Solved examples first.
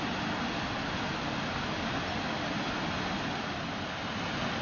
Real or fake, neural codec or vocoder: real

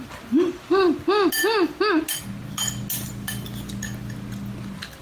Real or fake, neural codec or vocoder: real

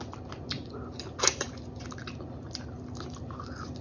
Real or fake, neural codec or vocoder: real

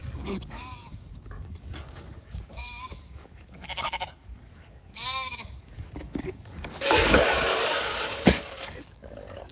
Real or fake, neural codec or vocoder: fake, codec, DAC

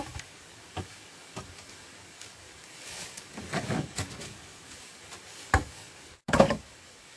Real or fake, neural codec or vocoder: fake, codec, DAC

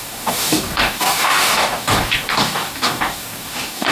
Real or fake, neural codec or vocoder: fake, codec, DAC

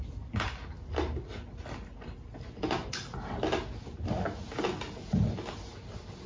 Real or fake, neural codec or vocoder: real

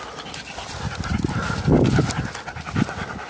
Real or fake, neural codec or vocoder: real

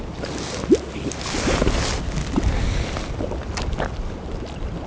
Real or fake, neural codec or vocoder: real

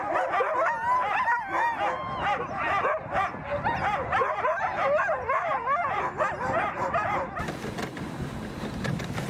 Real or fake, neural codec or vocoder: real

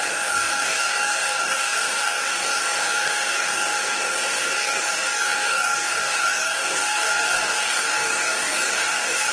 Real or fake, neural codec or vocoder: fake, codec, DAC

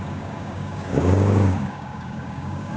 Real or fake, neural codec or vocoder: fake, codec, DAC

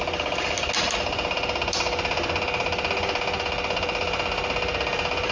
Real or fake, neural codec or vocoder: real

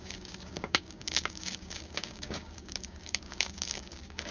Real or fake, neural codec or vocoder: fake, codec, DAC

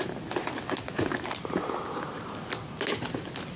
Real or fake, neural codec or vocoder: real